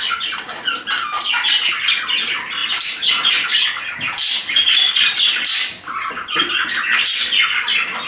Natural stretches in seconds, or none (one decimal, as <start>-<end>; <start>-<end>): 0.0-8.1